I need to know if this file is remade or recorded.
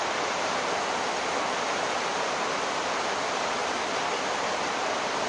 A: remade